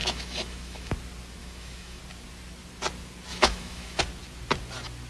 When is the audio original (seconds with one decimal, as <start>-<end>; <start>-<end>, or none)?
0.9-1.4; 2.0-3.3; 4.0-5.1